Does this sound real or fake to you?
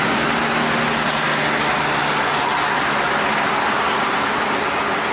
real